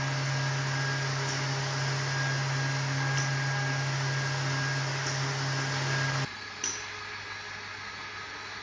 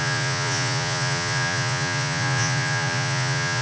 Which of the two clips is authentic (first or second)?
first